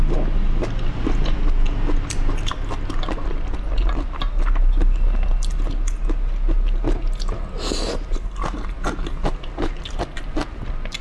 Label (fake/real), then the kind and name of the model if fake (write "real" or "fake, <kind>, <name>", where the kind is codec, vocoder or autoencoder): real